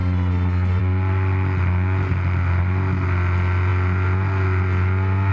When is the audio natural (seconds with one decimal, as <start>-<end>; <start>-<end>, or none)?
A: 0.0-5.3